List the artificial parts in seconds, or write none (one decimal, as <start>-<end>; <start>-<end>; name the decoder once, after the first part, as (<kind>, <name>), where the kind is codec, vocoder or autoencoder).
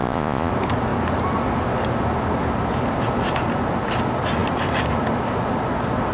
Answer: 0.0-0.5 (vocoder, Vocos)